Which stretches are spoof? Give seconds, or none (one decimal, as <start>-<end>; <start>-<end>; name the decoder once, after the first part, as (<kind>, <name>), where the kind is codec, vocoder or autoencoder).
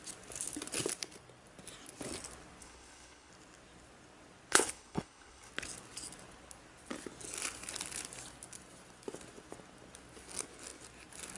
2.6-3.3 (codec, HILCodec); 4.5-5.5